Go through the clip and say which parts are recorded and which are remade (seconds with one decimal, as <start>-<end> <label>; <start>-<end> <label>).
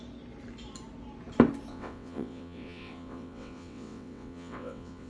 0.0-1.7 recorded; 1.7-5.1 remade